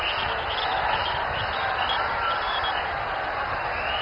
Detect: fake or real real